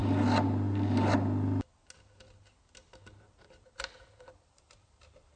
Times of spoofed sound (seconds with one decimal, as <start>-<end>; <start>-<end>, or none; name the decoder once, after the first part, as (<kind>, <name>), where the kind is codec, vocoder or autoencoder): 3.2-5.4 (vocoder, BigVGAN v2)